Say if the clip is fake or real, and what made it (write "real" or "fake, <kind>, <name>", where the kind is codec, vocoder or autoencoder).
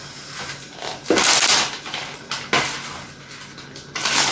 real